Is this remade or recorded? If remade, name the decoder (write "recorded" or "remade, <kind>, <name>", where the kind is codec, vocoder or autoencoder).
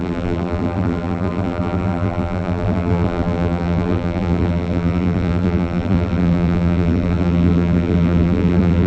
remade, vocoder, BigVGAN v2